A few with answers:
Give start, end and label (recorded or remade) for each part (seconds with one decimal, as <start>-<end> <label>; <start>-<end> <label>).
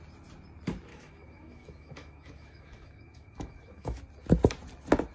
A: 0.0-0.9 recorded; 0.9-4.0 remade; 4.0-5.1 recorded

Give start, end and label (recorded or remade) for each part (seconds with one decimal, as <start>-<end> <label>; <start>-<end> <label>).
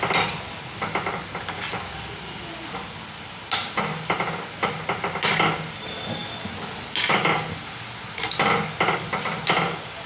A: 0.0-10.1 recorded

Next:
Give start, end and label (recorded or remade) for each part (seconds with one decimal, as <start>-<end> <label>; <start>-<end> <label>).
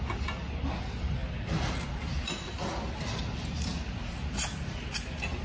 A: 0.0-5.4 recorded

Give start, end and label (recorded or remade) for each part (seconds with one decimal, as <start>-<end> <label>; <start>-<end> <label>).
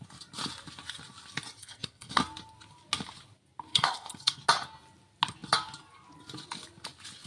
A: 0.0-1.6 recorded; 1.6-2.2 remade; 2.2-3.7 recorded; 3.7-4.4 remade; 4.4-7.3 recorded